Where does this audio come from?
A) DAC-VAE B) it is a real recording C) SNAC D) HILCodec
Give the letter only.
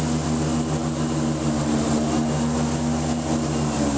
B